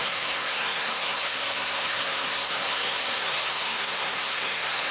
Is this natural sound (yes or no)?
no